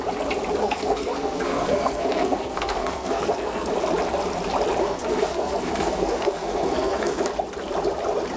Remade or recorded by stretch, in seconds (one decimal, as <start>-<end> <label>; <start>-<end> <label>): 0.0-0.6 recorded; 0.6-3.7 remade; 3.7-4.8 recorded; 4.8-7.2 remade; 7.2-8.4 recorded